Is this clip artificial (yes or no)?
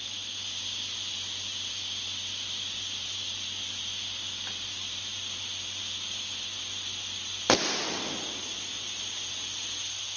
no